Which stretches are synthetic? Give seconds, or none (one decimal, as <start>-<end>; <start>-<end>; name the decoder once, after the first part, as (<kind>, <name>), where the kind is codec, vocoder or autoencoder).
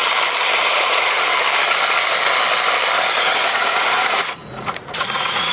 0.7-1.3 (vocoder, Vocos); 3.2-5.5